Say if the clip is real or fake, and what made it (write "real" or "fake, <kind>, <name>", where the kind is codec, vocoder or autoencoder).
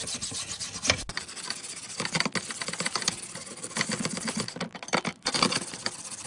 real